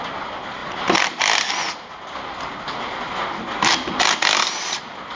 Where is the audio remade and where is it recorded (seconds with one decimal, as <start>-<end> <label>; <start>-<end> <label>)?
0.0-5.2 recorded